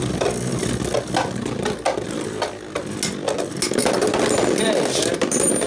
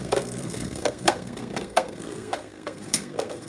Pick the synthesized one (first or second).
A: second